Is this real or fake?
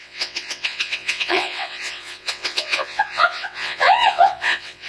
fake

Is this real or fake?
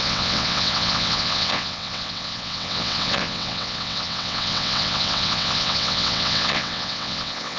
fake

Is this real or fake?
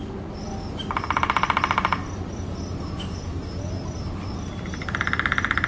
real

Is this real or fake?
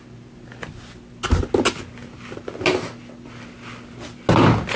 real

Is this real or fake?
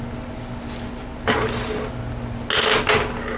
real